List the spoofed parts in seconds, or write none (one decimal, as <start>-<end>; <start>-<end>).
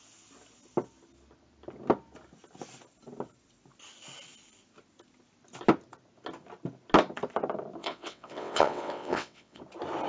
7.8-9.6